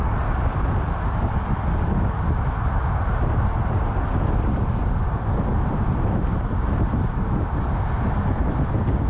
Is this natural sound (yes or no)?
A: yes